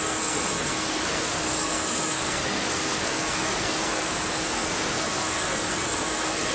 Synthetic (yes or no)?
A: yes